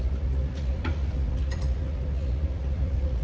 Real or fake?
fake